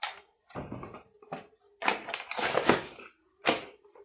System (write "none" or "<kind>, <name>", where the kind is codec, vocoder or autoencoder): none